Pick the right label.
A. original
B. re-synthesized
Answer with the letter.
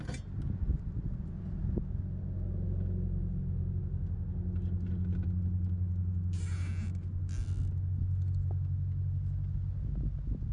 A